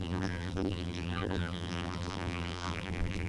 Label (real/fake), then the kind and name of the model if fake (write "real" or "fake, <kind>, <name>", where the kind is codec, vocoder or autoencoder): fake, vocoder, BigVGAN v2